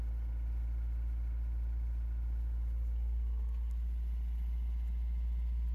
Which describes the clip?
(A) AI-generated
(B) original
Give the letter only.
B